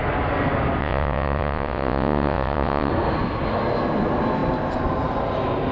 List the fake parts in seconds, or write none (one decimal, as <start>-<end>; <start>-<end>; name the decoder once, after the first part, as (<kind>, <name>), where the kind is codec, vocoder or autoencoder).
0.8-2.9 (vocoder, WaveNeXt)